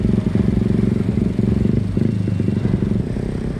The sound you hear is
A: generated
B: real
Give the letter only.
B